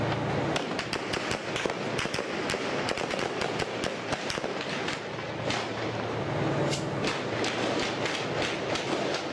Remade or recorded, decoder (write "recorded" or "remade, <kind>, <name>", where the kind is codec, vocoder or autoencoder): recorded